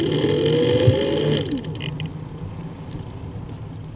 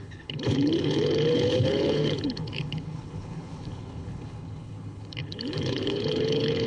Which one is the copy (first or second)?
second